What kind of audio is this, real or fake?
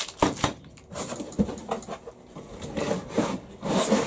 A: real